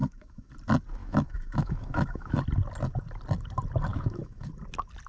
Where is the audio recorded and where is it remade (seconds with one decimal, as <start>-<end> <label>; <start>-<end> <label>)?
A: 0.0-0.5 remade; 0.5-1.0 recorded; 1.0-2.4 remade; 2.4-3.9 recorded; 3.9-4.5 remade; 4.5-5.1 recorded

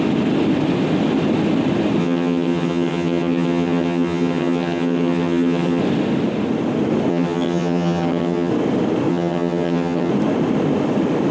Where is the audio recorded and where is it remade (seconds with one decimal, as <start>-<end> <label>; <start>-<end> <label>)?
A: 0.0-2.0 recorded; 2.0-5.8 remade; 5.8-7.1 recorded; 7.1-8.5 remade; 8.5-9.1 recorded; 9.1-10.1 remade; 10.1-11.3 recorded

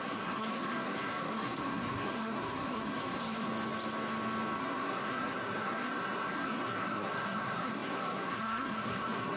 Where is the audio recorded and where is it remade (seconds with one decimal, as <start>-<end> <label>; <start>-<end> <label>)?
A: 0.0-3.5 remade; 3.5-4.6 recorded; 4.6-9.4 remade

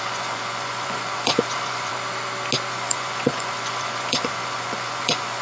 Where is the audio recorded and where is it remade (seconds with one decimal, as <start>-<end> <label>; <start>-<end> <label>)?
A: 0.0-1.9 remade; 1.9-2.7 recorded; 2.7-5.4 remade

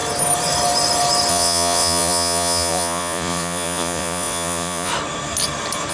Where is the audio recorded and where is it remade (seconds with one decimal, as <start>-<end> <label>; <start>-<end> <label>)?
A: 0.0-1.3 recorded; 1.3-4.9 remade; 4.9-5.9 recorded